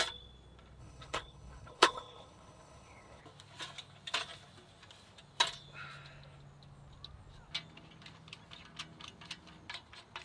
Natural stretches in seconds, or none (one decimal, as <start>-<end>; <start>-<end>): 0.0-0.8; 3.2-10.2